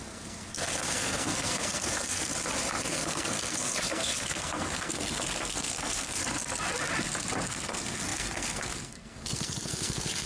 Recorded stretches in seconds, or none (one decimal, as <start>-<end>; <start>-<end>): 2.3-2.8; 6.2-7.5